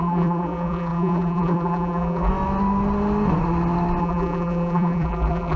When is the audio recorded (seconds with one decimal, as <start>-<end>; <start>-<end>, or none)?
2.3-4.0